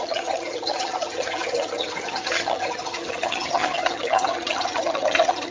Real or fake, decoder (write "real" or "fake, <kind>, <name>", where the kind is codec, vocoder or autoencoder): fake, vocoder, HiFi-GAN